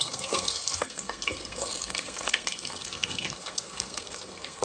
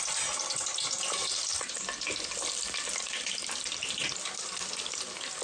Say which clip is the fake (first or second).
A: first